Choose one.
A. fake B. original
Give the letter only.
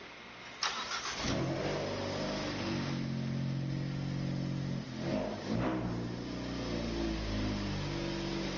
B